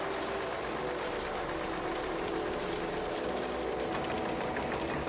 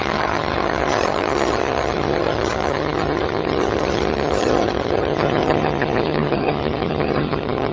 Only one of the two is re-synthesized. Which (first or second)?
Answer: second